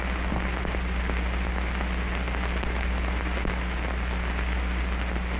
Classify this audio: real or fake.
real